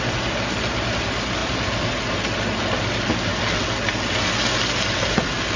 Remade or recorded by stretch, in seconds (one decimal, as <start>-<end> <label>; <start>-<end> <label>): 0.0-5.6 recorded